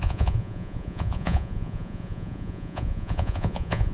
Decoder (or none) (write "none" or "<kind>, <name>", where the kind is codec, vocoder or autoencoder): vocoder, Vocos